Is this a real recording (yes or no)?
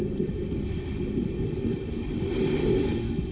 yes